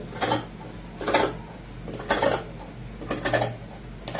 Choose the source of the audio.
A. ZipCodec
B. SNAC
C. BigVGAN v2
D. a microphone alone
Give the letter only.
D